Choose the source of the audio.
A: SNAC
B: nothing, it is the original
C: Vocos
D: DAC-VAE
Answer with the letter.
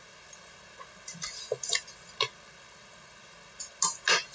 B